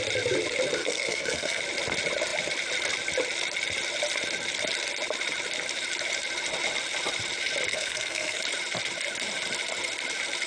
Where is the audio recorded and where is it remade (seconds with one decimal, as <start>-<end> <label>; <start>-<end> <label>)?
0.0-0.8 recorded; 0.8-1.6 remade; 1.6-7.7 recorded; 7.7-8.4 remade; 8.4-10.5 recorded